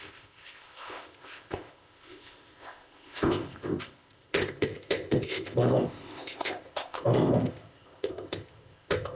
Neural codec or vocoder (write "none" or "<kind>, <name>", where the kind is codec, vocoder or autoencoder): codec, ZipCodec